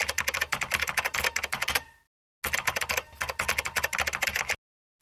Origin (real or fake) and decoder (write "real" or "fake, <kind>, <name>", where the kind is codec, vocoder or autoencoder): real